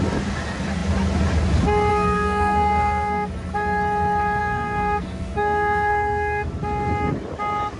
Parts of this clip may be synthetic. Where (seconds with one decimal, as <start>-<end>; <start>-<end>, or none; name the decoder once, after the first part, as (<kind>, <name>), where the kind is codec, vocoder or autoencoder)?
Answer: 1.9-3.3 (codec, SNAC); 4.4-6.5